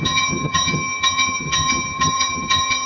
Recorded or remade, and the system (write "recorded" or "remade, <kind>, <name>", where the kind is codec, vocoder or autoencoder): remade, vocoder, HiFi-GAN